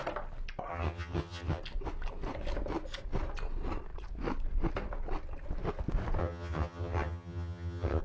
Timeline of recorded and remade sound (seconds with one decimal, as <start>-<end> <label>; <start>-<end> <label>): 0.0-0.7 recorded; 0.7-1.6 remade; 1.6-6.2 recorded; 6.2-8.0 remade